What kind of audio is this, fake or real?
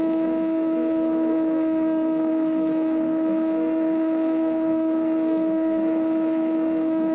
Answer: fake